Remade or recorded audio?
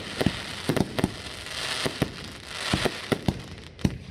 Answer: recorded